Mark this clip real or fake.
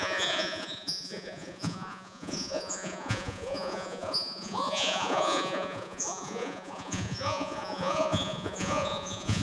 fake